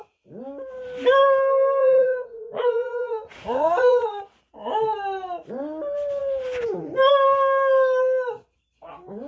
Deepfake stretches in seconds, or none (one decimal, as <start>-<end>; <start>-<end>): 1.8-4.2